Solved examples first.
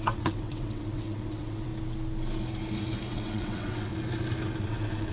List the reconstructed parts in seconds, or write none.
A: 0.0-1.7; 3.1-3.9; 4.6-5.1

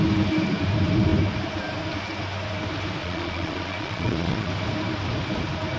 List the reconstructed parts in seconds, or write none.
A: 3.0-4.5

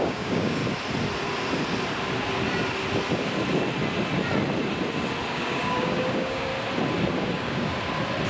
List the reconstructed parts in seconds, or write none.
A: 0.0-0.6; 5.3-6.5; 7.2-7.7

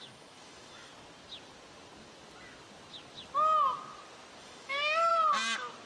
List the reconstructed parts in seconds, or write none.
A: 0.0-0.9; 4.4-5.1

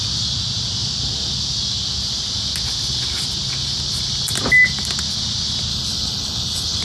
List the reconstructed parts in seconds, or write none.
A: 5.7-6.8

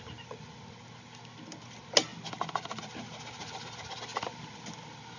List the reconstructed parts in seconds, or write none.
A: none